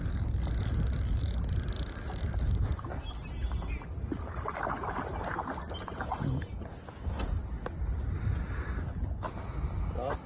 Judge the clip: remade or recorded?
recorded